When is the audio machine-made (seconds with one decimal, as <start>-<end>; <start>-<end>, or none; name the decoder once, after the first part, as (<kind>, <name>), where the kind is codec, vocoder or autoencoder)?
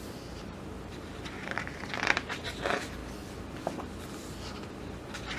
0.0-3.0 (vocoder, BigVGAN v2)